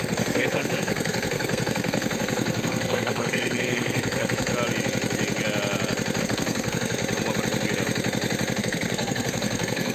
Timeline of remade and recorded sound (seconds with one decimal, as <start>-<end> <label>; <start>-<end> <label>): 0.0-4.5 remade; 4.5-6.2 recorded; 6.2-7.0 remade; 7.0-8.6 recorded; 8.6-9.9 remade